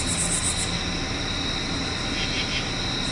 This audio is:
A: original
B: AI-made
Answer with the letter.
A